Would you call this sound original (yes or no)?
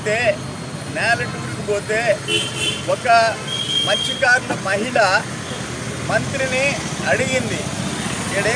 yes